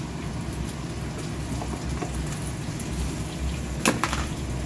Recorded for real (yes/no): yes